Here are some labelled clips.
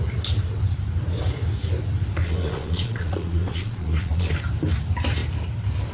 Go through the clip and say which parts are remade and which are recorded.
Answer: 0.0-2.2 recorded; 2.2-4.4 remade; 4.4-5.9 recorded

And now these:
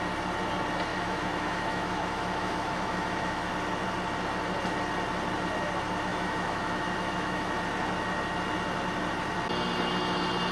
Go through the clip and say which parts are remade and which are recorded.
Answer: 0.0-0.9 recorded; 0.9-3.5 remade; 3.5-6.1 recorded; 6.1-7.5 remade; 7.5-10.5 recorded